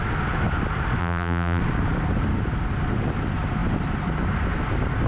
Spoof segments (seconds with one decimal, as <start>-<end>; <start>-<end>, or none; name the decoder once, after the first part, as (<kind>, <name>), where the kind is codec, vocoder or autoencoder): 1.0-1.6 (vocoder, BigVGAN v2)